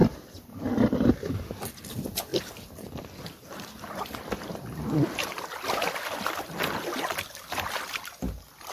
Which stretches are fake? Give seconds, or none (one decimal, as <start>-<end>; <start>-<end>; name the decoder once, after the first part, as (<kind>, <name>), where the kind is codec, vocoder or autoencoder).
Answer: 0.0-1.2 (vocoder, BigVGAN v2)